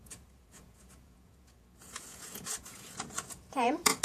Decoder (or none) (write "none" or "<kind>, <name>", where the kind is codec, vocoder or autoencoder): vocoder, Vocos